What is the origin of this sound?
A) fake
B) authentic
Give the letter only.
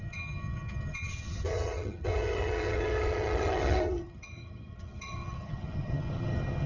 A